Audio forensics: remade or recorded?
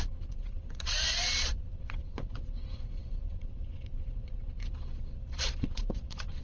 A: remade